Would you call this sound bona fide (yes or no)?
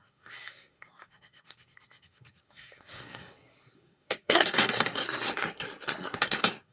no